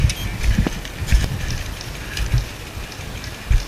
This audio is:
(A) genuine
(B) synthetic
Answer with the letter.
A